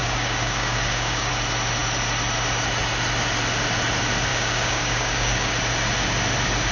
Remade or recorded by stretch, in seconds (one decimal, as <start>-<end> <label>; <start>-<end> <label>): 0.0-1.3 remade; 1.3-4.3 recorded; 4.3-5.5 remade; 5.5-6.7 recorded